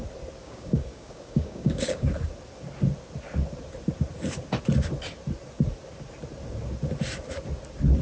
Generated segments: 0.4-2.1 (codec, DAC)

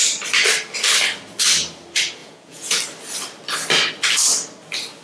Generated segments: 2.2-2.8 (vocoder, Vocos)